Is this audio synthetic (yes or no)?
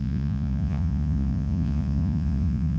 yes